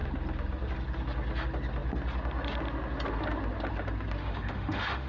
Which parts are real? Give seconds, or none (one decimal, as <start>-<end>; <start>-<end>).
0.0-4.2